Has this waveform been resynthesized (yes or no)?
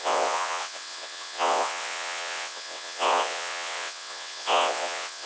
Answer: yes